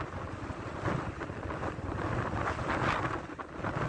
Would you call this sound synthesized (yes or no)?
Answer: no